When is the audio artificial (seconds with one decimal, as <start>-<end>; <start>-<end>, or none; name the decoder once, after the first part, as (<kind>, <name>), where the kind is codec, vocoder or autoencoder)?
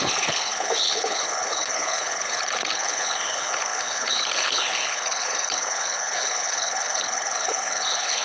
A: 0.0-8.2 (codec, HILCodec)